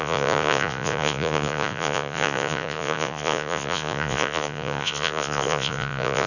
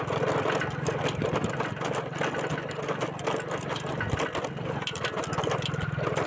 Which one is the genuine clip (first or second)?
second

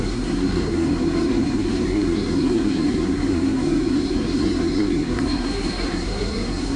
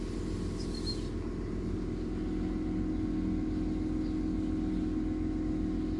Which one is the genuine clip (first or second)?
second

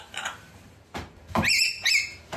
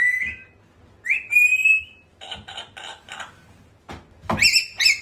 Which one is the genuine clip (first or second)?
second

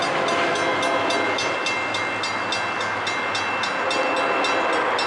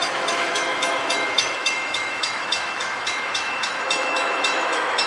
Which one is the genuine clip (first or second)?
first